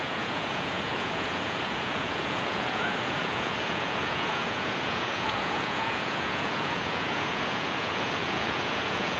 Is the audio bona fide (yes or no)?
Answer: no